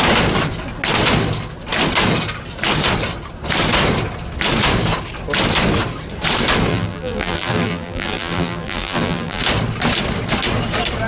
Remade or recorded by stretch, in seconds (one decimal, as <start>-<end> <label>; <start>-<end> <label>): 0.0-6.7 recorded; 6.7-9.4 remade; 9.4-11.1 recorded